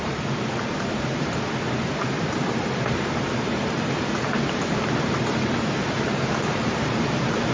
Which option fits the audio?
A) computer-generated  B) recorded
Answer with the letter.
A